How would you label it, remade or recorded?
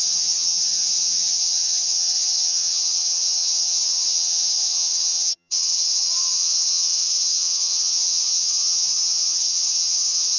remade